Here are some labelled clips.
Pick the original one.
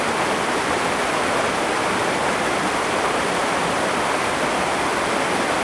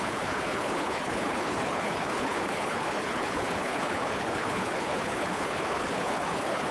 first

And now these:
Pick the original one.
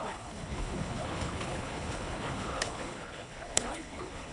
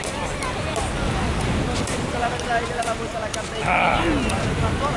second